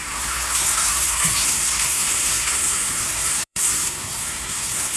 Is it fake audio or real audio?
fake